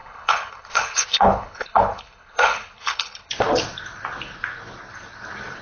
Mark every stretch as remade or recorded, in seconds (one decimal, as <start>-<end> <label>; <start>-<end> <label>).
0.0-3.3 remade; 3.3-5.6 recorded